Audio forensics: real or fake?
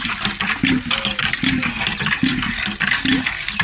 real